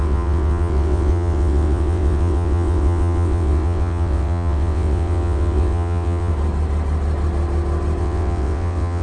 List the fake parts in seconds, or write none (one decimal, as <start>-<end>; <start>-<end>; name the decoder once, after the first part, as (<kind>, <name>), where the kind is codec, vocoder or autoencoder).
0.0-6.3 (vocoder, WaveNeXt); 8.0-9.0